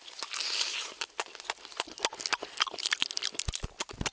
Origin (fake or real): real